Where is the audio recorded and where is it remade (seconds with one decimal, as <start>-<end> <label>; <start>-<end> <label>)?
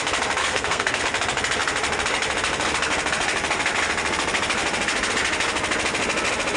0.0-0.4 recorded; 0.4-1.0 remade; 1.0-6.6 recorded